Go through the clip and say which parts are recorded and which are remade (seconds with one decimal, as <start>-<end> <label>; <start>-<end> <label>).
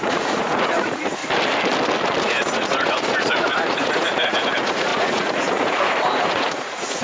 0.0-1.2 remade; 1.2-2.2 recorded; 2.2-7.0 remade